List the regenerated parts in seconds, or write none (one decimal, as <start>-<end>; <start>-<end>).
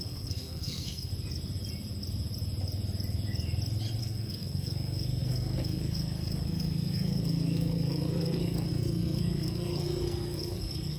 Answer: 0.0-1.1; 4.0-11.0